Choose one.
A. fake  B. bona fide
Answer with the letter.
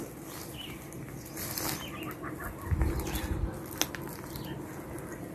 B